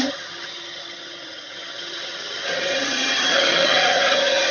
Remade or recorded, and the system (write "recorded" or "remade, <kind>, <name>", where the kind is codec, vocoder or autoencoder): remade, vocoder, HiFi-GAN